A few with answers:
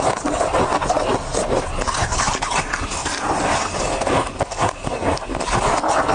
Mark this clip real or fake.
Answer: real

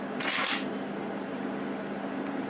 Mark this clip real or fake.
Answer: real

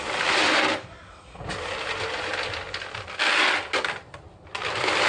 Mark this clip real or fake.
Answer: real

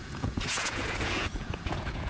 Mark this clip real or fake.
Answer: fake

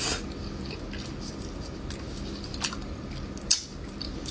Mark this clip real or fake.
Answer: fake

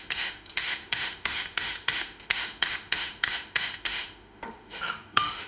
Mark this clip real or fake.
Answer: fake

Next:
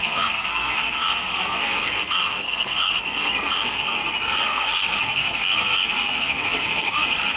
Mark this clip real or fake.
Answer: fake